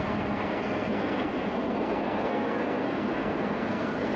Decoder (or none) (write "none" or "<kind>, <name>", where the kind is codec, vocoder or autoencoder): codec, SNAC